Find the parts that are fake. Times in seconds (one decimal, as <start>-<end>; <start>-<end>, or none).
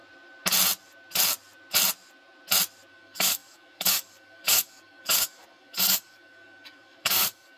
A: 2.9-7.6